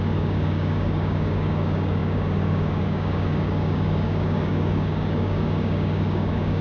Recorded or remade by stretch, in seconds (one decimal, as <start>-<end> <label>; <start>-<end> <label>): 0.0-6.6 remade